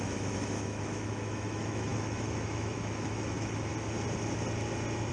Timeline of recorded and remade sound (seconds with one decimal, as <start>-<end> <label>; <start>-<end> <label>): 0.0-3.7 remade; 3.7-5.1 recorded